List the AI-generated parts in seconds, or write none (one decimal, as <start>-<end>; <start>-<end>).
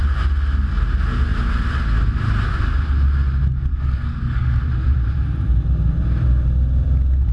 3.7-4.6